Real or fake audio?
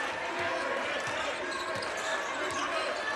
real